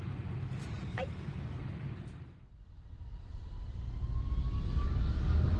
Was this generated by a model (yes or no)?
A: no